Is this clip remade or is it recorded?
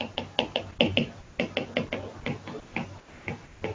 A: recorded